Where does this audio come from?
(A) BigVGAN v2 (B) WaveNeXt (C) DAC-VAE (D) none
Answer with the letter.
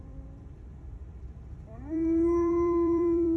A